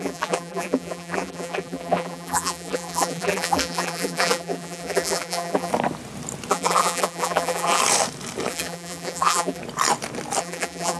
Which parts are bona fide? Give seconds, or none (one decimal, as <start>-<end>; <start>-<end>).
5.7-6.5; 7.8-8.5; 9.6-10.4